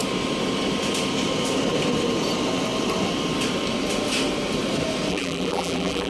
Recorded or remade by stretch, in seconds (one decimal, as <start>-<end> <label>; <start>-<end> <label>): 0.0-5.1 recorded; 5.1-6.1 remade